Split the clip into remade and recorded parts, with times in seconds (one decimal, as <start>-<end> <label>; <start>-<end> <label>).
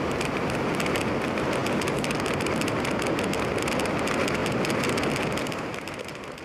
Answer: 0.0-6.4 recorded